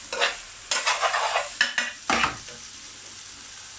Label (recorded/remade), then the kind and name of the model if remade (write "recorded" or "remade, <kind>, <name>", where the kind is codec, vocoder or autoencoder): recorded